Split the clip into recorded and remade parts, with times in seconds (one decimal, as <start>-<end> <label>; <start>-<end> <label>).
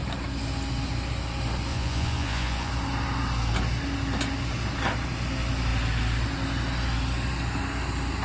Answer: 0.0-1.7 recorded; 1.7-2.7 remade; 2.7-8.2 recorded